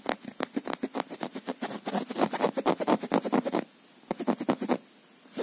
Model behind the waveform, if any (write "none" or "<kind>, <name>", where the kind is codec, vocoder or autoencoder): none